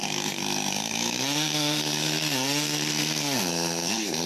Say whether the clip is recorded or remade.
remade